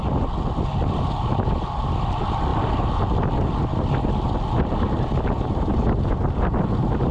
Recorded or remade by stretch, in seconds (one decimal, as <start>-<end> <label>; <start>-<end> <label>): 0.0-7.1 recorded